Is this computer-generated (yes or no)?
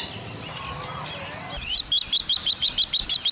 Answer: no